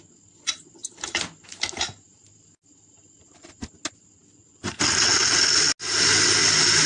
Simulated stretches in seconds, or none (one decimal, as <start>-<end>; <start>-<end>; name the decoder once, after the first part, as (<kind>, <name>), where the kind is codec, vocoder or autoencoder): 0.8-3.8 (vocoder, BigVGAN v2)